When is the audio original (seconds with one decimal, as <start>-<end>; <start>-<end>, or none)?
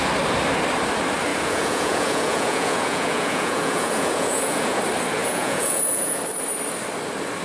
0.0-1.3; 4.8-5.2; 6.2-7.4